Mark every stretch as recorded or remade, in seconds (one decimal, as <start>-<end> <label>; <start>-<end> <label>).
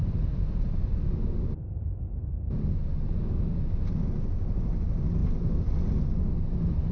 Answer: 0.0-2.7 remade; 2.7-5.2 recorded; 5.2-6.0 remade; 6.0-6.9 recorded